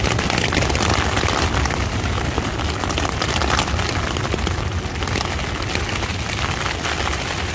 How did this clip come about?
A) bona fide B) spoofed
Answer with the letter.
A